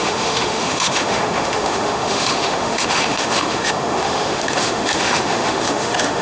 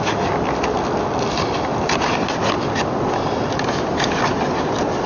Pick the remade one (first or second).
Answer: first